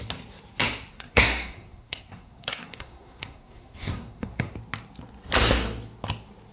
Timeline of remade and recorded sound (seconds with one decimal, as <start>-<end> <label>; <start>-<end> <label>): 0.0-0.9 recorded; 0.9-4.5 remade; 4.5-6.5 recorded